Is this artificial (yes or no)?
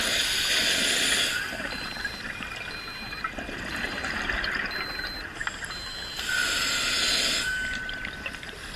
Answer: no